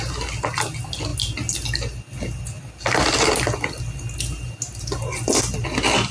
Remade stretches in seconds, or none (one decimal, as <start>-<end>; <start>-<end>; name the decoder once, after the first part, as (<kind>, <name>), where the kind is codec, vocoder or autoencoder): none